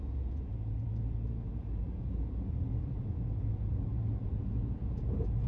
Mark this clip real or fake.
fake